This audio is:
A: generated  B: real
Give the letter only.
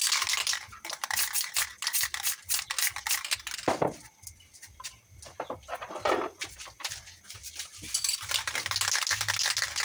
B